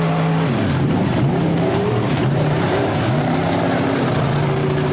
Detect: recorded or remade remade